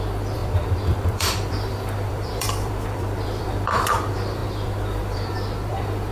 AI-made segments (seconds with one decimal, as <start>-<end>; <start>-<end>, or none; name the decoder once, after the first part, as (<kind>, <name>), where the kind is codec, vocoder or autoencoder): 0.0-6.1 (vocoder, BigVGAN v2)